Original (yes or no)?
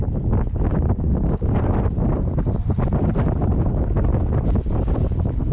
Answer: yes